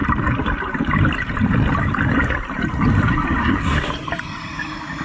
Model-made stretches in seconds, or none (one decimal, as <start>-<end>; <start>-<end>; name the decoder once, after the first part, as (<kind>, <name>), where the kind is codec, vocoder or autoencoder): 3.4-3.9 (codec, SNAC)